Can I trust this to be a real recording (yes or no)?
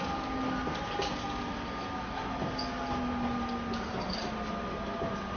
yes